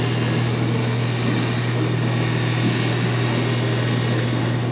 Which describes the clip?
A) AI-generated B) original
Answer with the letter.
B